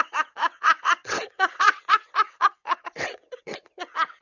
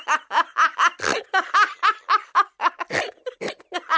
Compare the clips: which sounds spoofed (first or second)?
first